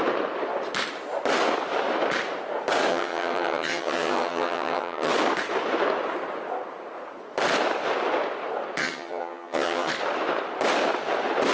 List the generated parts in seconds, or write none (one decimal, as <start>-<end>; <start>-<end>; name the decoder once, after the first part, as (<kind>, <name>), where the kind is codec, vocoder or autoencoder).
2.9-5.1 (vocoder, HiFi-GAN); 8.8-9.9